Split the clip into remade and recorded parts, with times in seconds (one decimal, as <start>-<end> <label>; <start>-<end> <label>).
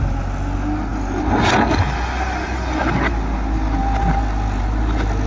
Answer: 0.0-5.3 recorded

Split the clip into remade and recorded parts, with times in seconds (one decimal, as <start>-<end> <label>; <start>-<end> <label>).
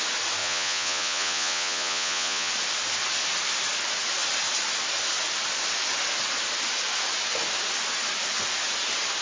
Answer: 0.0-0.4 recorded; 0.4-2.5 remade; 2.5-9.2 recorded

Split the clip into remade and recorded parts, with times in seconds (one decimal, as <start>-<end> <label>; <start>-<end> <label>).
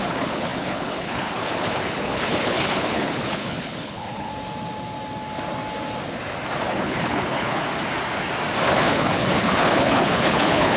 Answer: 0.0-4.3 remade; 4.3-6.6 recorded; 6.6-7.6 remade; 7.6-8.7 recorded; 8.7-10.8 remade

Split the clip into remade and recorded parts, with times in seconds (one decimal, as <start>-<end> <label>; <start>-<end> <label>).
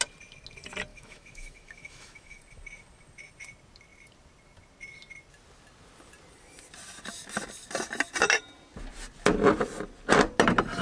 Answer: 0.0-0.9 recorded; 0.9-2.4 remade; 2.4-10.8 recorded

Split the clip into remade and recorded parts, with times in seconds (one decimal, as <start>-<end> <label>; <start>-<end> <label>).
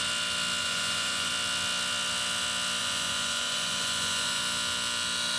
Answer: 0.0-0.6 recorded; 0.6-1.3 remade; 1.3-2.8 recorded; 2.8-4.4 remade; 4.4-5.4 recorded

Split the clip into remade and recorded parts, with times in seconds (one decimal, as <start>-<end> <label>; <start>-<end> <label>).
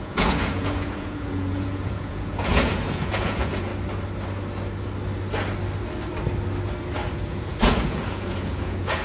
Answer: 0.0-3.7 remade; 3.7-7.1 recorded; 7.1-9.0 remade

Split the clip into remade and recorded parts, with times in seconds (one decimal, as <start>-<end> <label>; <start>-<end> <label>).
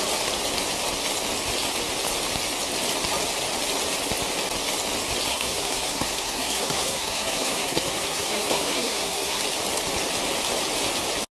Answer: 0.0-5.3 recorded; 5.3-9.4 remade; 9.4-11.4 recorded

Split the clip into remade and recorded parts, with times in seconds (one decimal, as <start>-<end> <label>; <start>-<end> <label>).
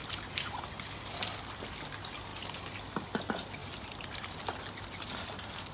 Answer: 0.0-0.5 remade; 0.5-3.6 recorded; 3.6-4.4 remade; 4.4-5.7 recorded